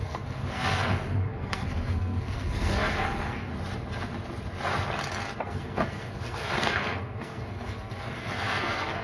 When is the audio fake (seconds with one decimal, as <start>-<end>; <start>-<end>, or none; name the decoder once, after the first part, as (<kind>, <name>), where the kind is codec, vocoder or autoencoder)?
0.0-3.5 (codec, SNAC); 5.4-9.0

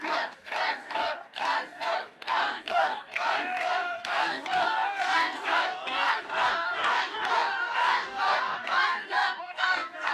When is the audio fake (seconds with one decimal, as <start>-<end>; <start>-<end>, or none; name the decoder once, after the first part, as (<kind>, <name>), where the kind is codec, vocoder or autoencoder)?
0.0-10.1 (codec, DAC)

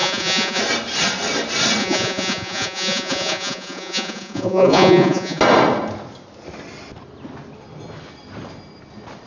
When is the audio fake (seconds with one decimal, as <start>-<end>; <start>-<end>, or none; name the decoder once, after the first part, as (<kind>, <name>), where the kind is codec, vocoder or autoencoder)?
0.0-0.6 (vocoder, Vocos); 1.8-5.4

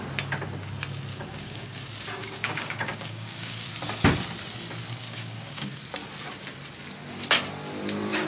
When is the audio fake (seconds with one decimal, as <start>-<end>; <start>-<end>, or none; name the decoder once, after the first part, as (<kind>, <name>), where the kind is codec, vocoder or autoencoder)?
1.1-1.8 (codec, DAC); 2.2-3.7; 5.0-5.8

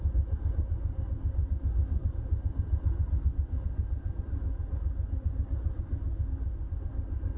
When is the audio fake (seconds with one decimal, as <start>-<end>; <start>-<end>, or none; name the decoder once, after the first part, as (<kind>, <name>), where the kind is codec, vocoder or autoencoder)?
none

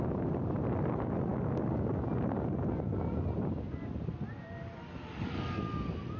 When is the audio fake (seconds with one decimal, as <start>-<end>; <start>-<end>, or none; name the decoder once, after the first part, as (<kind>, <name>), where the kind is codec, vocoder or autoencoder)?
none

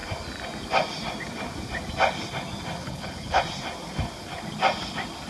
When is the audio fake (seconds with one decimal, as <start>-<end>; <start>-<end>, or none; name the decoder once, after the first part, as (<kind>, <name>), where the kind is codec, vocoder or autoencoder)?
2.8-3.4 (codec, HILCodec)

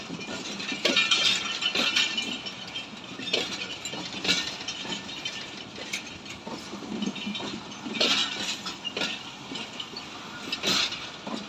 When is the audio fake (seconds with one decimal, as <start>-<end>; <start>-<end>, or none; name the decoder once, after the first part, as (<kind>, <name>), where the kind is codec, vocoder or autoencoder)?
0.0-11.5 (vocoder, BigVGAN v2)